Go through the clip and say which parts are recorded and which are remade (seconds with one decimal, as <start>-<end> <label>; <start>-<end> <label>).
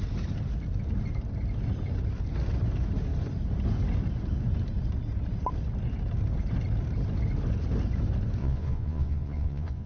0.0-8.4 recorded; 8.4-9.9 remade